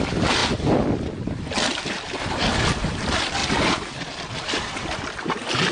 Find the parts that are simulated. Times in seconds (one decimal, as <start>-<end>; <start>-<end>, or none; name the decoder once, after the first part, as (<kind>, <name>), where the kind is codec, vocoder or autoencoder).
none